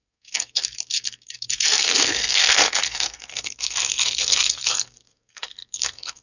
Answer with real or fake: fake